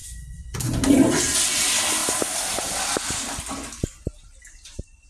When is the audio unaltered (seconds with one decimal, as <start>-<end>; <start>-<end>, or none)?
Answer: 0.0-5.1